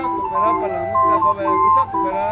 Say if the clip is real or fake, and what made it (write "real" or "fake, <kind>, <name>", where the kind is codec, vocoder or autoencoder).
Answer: real